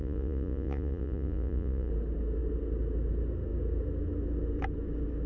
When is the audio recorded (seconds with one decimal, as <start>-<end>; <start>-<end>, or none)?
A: 1.9-5.3